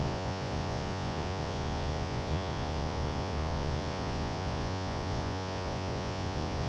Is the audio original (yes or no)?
no